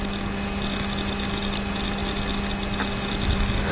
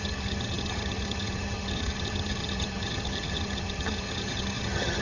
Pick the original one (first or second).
first